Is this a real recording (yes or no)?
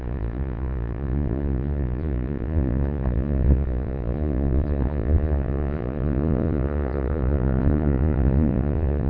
no